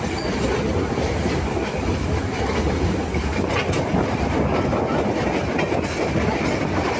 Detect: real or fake real